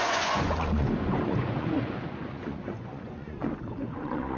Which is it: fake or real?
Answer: fake